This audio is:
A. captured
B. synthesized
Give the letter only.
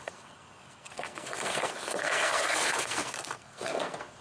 B